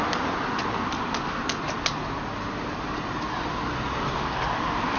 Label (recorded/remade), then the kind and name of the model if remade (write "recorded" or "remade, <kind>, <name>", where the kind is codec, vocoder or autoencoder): recorded